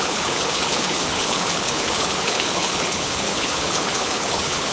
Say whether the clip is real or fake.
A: fake